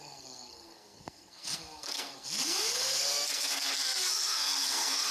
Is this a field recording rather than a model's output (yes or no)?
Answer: no